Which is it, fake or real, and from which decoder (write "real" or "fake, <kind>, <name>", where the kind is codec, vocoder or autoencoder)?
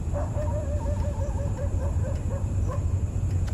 fake, vocoder, BigVGAN v2